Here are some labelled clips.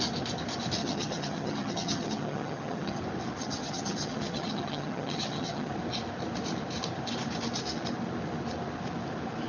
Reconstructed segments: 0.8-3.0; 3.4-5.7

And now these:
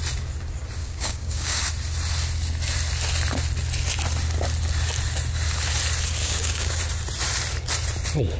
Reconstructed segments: 0.8-1.7; 6.2-6.8

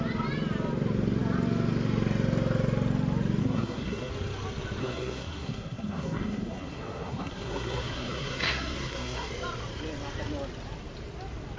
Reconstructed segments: 3.4-4.1; 4.8-9.3

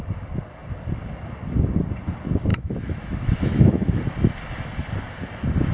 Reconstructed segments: 2.5-3.9

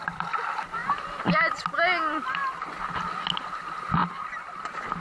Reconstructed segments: none

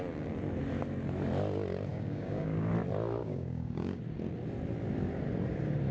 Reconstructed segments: 1.9-2.7; 3.2-4.0

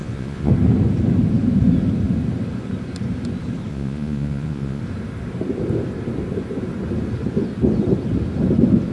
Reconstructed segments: 0.0-0.5; 3.7-4.8

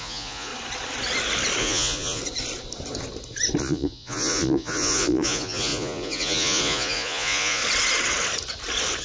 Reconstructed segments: 0.0-0.5; 1.6-2.2; 3.6-7.6